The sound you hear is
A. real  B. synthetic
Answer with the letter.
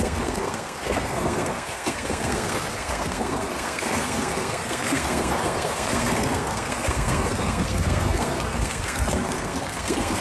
B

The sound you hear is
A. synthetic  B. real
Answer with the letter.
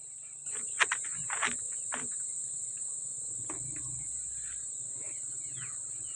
B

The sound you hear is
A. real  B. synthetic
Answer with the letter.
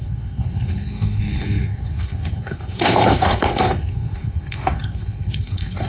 B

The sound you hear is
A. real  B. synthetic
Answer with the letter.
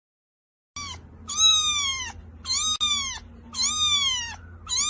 A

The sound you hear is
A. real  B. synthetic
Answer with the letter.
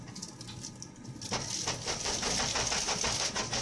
A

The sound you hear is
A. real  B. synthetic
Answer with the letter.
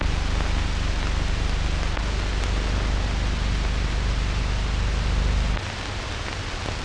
A